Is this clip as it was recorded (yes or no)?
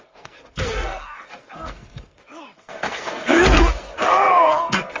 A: no